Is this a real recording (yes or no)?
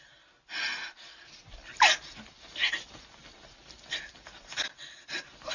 yes